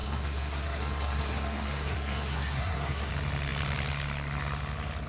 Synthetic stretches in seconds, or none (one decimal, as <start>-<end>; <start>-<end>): 0.0-3.1